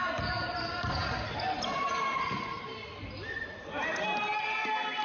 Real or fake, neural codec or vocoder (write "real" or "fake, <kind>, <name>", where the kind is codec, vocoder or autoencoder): real